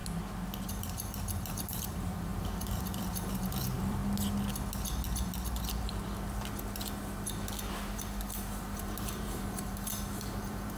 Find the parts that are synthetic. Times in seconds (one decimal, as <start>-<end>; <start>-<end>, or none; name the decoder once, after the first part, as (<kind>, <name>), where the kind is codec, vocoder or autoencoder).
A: 0.7-4.0 (vocoder, BigVGAN v2); 7.7-10.8